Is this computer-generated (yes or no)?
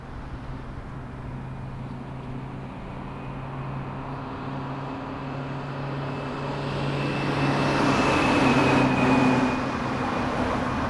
no